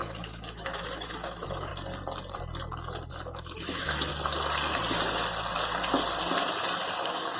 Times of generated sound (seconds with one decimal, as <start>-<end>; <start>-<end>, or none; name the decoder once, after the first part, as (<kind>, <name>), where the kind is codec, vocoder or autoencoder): 0.0-1.7 (autoencoder, DAC-VAE); 3.1-4.1; 7.0-7.4